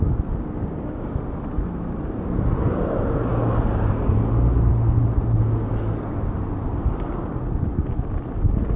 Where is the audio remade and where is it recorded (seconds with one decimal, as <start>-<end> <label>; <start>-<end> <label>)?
0.0-0.6 recorded; 0.6-1.2 remade; 1.2-8.8 recorded